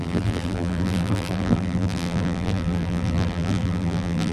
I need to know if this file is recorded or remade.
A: remade